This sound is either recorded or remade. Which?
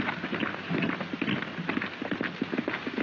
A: recorded